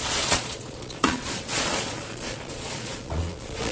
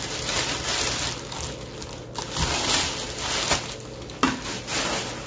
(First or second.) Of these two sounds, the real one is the second